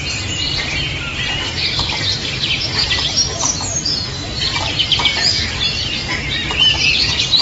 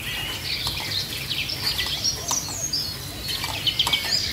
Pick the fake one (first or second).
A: first